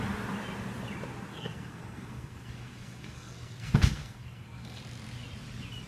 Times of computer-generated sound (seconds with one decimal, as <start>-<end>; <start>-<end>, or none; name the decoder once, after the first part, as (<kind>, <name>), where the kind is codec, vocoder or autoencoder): 1.3-4.8 (codec, SNAC)